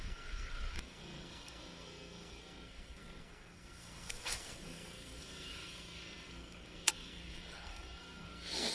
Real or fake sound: fake